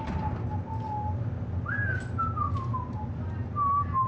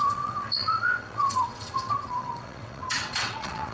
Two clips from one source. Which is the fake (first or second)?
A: second